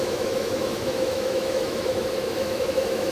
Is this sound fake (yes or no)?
yes